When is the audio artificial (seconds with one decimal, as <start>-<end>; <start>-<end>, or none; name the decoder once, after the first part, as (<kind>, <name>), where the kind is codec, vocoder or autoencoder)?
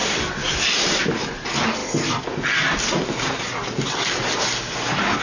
0.0-1.1 (vocoder, BigVGAN v2)